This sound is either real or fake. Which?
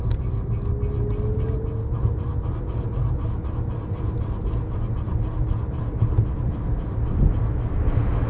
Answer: real